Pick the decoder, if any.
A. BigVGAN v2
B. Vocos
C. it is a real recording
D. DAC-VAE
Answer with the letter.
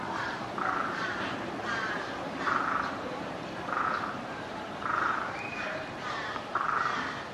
A